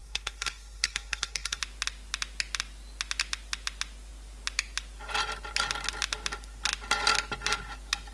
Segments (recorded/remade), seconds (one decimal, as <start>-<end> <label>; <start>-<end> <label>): 0.0-1.6 remade; 1.6-8.1 recorded